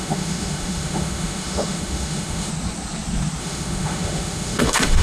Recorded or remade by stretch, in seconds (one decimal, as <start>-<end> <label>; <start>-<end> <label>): 0.0-2.5 remade; 2.5-3.4 recorded; 3.4-5.0 remade